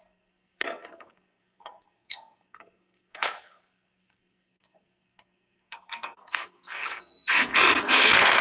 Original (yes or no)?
no